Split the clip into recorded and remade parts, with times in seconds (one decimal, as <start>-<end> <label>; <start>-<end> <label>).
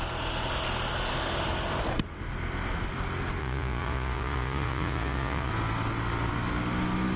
0.0-3.4 recorded; 3.4-5.5 remade; 5.5-7.2 recorded